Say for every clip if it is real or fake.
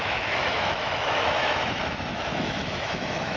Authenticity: fake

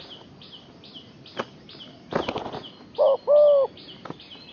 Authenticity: real